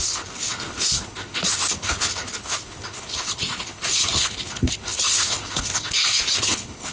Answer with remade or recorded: remade